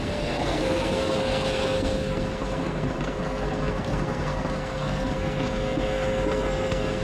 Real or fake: fake